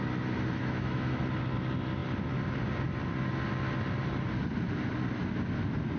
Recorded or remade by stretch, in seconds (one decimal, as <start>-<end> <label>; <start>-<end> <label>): 0.0-0.6 recorded; 0.6-1.2 remade; 1.2-6.0 recorded